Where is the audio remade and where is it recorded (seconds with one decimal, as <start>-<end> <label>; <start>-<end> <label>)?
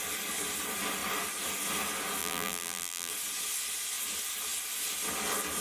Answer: 0.0-2.2 recorded; 2.2-3.1 remade; 3.1-5.6 recorded